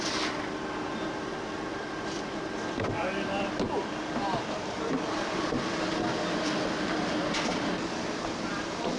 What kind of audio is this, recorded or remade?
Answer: remade